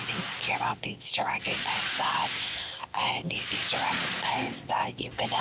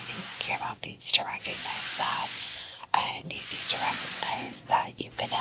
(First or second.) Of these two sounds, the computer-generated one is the second